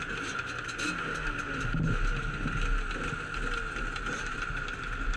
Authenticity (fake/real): real